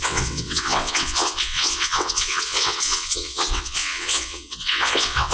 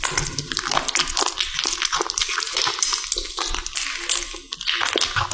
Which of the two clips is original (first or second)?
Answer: second